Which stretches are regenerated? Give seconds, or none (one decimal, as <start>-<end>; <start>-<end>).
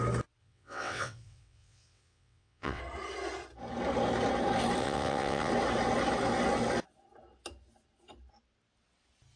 0.4-2.8; 4.8-5.5